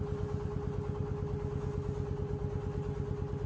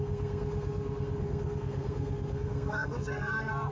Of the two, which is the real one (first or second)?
first